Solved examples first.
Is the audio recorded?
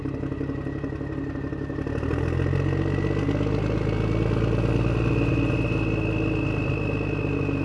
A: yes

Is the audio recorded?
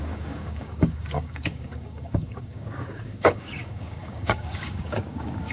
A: no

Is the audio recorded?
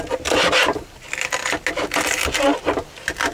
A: yes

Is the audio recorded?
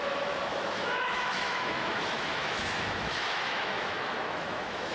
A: no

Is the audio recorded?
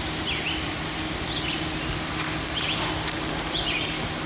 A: yes